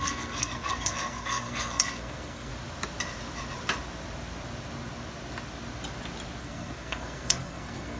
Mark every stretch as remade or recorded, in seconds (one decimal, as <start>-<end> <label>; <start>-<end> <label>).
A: 0.0-2.5 remade; 2.5-6.4 recorded; 6.4-8.0 remade